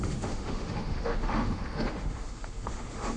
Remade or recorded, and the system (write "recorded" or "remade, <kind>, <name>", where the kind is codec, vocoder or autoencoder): remade, autoencoder, DAC-VAE